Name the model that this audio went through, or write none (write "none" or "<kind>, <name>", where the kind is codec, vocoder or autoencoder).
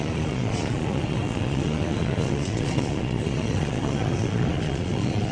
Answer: vocoder, Vocos